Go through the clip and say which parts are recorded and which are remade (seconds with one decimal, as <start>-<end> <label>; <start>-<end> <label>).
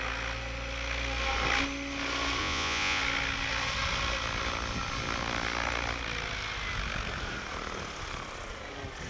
0.0-2.4 recorded; 2.4-3.0 remade; 3.0-9.1 recorded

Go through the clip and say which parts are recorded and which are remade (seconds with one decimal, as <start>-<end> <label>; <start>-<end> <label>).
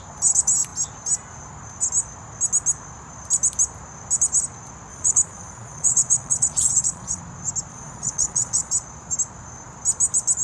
0.0-4.9 recorded; 4.9-7.2 remade; 7.2-7.7 recorded; 7.7-8.7 remade; 8.7-10.4 recorded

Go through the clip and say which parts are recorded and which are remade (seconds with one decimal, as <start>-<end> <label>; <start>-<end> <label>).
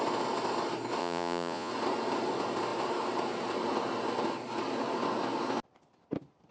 0.0-1.0 recorded; 1.0-1.7 remade; 1.7-6.5 recorded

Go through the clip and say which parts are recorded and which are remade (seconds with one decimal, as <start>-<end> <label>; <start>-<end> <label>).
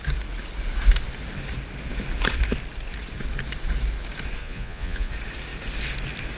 0.0-4.4 recorded; 4.4-5.1 remade; 5.1-6.4 recorded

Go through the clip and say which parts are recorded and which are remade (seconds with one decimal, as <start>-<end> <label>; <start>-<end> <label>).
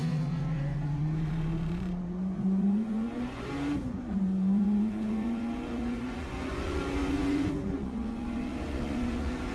0.0-9.5 remade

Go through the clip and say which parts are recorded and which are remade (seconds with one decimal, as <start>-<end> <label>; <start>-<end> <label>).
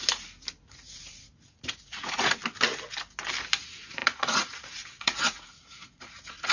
0.0-0.6 recorded; 0.6-2.4 remade; 2.4-3.6 recorded; 3.6-6.5 remade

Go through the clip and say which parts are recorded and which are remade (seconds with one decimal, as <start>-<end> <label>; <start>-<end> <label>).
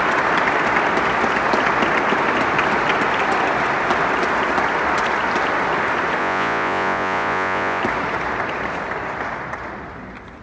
0.0-6.2 recorded; 6.2-7.8 remade; 7.8-10.4 recorded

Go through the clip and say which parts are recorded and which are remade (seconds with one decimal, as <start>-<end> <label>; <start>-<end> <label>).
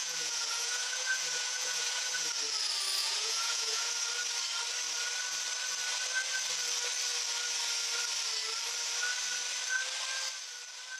0.0-2.3 remade; 2.3-3.0 recorded; 3.0-3.9 remade; 3.9-11.0 recorded